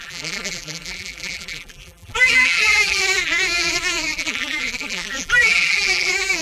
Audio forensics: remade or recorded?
remade